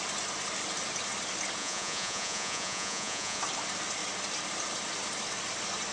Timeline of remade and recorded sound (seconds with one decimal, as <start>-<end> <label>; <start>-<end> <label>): 0.0-1.6 recorded; 1.6-3.4 remade; 3.4-5.9 recorded